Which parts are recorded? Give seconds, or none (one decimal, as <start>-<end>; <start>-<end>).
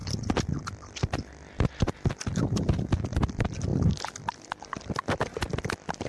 0.0-6.1